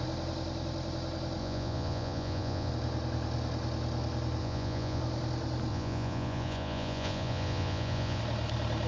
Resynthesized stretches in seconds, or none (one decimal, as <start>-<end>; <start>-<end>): 1.4-2.7; 4.4-5.0; 5.7-8.2